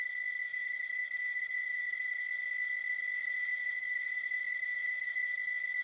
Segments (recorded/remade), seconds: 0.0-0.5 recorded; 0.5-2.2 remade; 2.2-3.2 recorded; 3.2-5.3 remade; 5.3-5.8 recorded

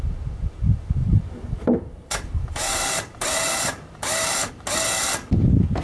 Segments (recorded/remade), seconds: 0.0-1.0 recorded; 1.0-4.5 remade; 4.5-5.8 recorded